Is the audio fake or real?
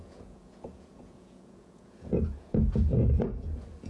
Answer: fake